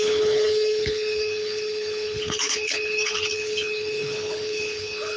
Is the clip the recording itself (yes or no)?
no